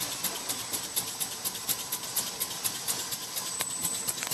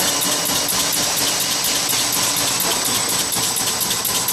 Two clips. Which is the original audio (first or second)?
second